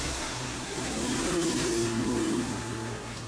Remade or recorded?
remade